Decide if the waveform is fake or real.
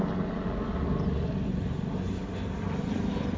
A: real